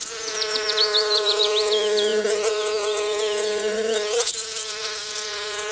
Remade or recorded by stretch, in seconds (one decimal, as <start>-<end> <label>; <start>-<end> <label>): 0.0-5.7 remade